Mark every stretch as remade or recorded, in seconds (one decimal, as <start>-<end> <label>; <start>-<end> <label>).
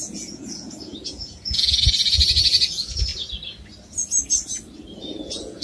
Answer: 0.0-3.1 remade; 3.1-5.0 recorded; 5.0-5.6 remade